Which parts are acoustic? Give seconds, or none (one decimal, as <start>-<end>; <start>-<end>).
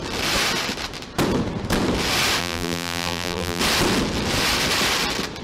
0.0-2.4; 3.6-5.4